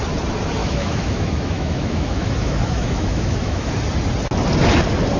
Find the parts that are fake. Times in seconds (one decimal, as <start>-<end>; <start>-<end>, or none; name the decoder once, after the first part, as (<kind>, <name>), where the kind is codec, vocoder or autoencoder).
0.6-3.7 (autoencoder, DAC-VAE)